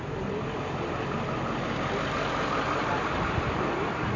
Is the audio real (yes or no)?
yes